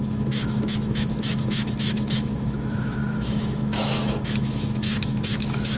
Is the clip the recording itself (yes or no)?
no